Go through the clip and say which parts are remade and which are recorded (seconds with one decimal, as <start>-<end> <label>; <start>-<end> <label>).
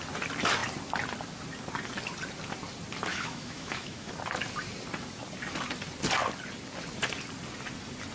0.0-3.1 recorded; 3.1-4.1 remade; 4.1-8.1 recorded